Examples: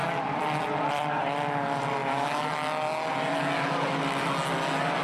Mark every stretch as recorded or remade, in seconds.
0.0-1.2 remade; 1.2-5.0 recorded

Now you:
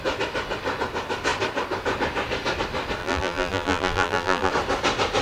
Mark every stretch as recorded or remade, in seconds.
0.0-3.0 recorded; 3.0-4.5 remade; 4.5-5.2 recorded

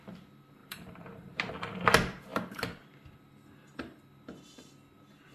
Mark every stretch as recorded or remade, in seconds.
0.0-0.6 recorded; 0.6-1.5 remade; 1.5-5.3 recorded

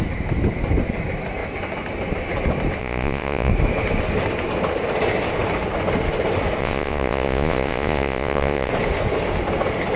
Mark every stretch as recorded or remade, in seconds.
0.0-2.8 recorded; 2.8-3.5 remade; 3.5-6.6 recorded; 6.6-8.7 remade; 8.7-10.0 recorded

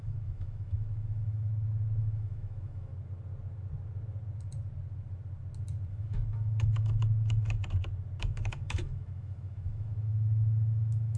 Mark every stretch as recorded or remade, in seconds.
0.0-1.5 remade; 1.5-2.0 recorded; 2.0-2.9 remade; 2.9-5.9 recorded; 5.9-7.6 remade; 7.6-8.2 recorded; 8.2-11.2 remade